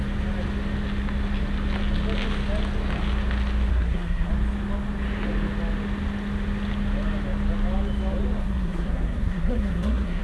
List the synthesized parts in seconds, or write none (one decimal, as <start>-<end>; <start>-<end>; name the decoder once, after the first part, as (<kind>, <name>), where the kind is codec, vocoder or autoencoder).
3.7-4.3 (codec, SNAC); 8.4-10.2